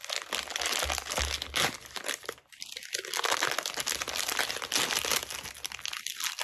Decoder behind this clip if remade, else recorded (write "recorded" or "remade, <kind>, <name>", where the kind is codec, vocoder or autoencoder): recorded